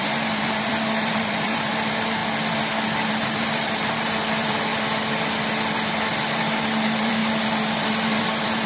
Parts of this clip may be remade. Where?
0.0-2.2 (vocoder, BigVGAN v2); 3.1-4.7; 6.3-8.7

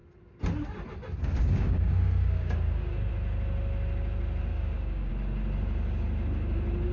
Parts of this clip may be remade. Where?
1.4-3.1 (codec, DAC); 4.5-5.1